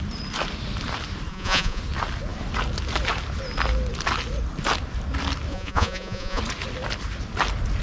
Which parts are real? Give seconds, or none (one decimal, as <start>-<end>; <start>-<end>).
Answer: 0.0-1.3; 1.8-5.5; 6.4-7.8